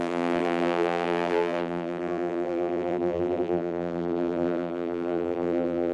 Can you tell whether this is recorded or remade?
remade